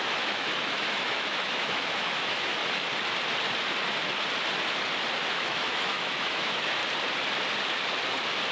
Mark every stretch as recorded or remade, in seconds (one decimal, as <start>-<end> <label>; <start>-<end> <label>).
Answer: 0.0-2.6 remade; 2.6-5.3 recorded; 5.3-6.8 remade; 6.8-8.5 recorded